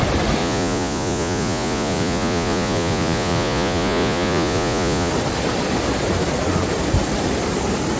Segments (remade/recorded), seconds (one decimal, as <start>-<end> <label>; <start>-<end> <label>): 0.0-0.4 recorded; 0.4-5.1 remade; 5.1-8.0 recorded